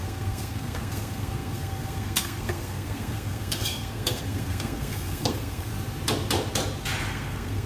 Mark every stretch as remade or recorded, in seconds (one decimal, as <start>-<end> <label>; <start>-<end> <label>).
0.0-5.7 remade; 5.7-7.1 recorded; 7.1-7.7 remade